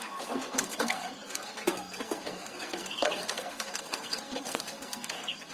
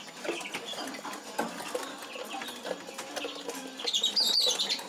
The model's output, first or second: first